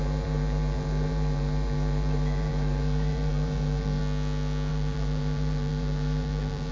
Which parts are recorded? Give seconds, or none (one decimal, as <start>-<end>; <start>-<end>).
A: 4.0-4.7